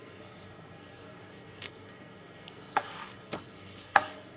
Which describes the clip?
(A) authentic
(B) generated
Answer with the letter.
B